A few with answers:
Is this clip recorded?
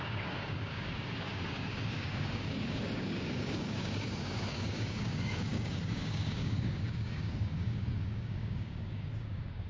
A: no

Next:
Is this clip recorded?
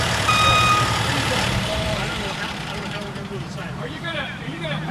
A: no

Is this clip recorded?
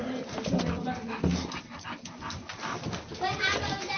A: yes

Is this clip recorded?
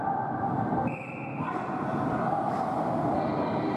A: no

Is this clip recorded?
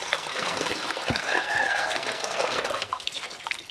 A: no